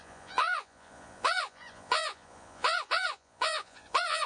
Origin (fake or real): fake